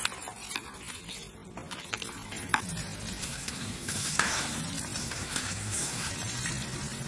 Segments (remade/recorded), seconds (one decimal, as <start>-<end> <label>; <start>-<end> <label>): 0.0-3.2 recorded; 3.2-4.6 remade; 4.6-5.0 recorded; 5.0-6.1 remade; 6.1-7.1 recorded